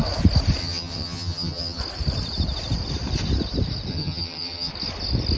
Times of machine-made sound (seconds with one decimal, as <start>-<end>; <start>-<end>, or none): 0.6-1.8; 3.9-4.7